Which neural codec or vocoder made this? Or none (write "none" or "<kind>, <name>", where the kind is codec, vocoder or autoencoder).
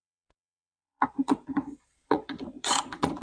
vocoder, Vocos